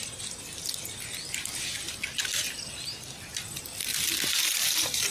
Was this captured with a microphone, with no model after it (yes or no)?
yes